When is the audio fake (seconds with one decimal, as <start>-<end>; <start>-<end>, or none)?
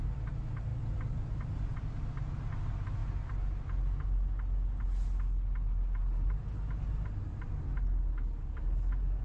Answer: 0.7-1.5